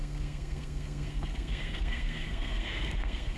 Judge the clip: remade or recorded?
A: remade